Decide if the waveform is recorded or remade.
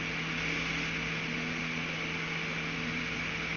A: recorded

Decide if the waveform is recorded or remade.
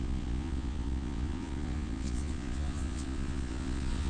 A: remade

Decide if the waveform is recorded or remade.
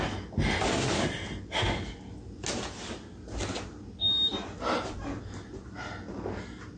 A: recorded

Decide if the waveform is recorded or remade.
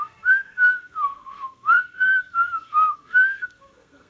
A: remade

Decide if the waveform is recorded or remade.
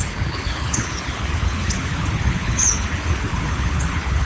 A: remade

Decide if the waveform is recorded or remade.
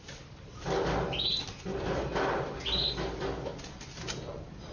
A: recorded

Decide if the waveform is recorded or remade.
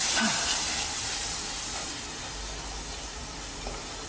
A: recorded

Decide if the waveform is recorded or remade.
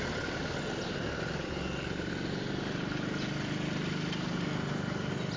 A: recorded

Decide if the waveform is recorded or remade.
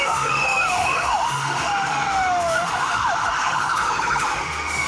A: remade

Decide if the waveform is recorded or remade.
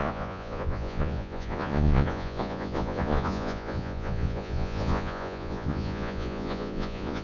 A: remade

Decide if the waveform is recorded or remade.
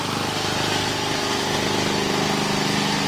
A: recorded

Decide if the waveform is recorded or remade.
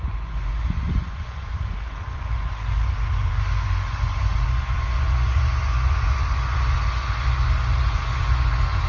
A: remade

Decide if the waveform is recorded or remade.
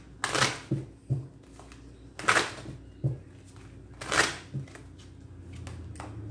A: recorded